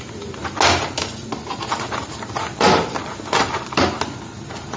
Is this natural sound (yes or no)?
yes